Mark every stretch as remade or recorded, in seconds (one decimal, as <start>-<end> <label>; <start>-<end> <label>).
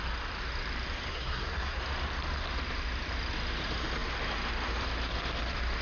0.0-1.1 recorded; 1.1-1.8 remade; 1.8-5.8 recorded